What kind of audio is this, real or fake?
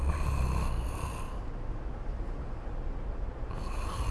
real